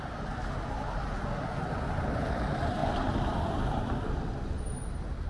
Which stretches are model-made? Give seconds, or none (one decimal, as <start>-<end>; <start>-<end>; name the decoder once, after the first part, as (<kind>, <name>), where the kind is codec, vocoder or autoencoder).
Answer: none